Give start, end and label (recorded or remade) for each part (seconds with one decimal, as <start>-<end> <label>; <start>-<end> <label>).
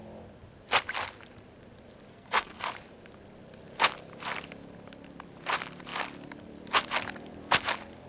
0.0-2.1 recorded; 2.1-2.7 remade; 2.7-8.1 recorded